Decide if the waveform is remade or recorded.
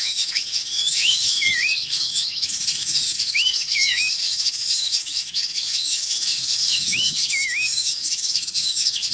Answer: remade